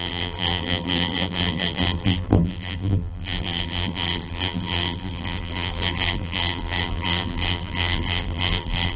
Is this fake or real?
fake